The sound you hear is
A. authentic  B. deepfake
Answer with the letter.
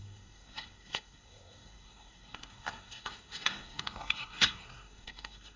B